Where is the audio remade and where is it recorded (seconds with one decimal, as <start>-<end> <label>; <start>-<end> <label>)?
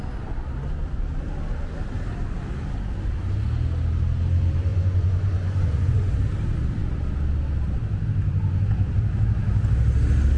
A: 0.0-4.7 recorded; 4.7-6.1 remade; 6.1-10.4 recorded